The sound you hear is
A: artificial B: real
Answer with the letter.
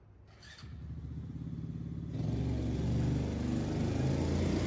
B